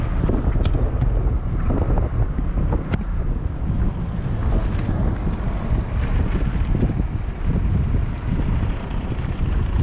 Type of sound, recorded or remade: recorded